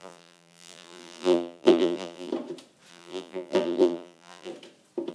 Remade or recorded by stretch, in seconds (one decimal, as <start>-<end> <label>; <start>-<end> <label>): 0.0-2.3 remade; 2.3-2.9 recorded; 2.9-4.5 remade; 4.5-5.1 recorded